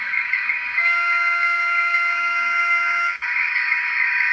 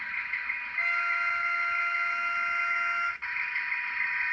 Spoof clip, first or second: first